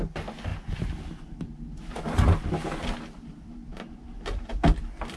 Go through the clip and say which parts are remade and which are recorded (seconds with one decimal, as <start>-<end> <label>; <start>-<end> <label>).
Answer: 0.0-5.2 recorded